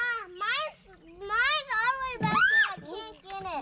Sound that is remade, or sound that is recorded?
recorded